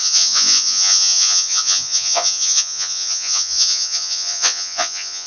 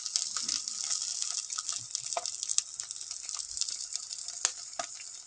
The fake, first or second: first